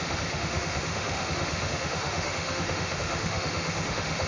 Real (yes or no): no